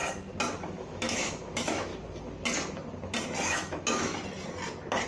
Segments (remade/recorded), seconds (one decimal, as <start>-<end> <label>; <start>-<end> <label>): 0.0-0.8 recorded; 0.8-1.9 remade; 1.9-3.5 recorded; 3.5-4.1 remade; 4.1-5.1 recorded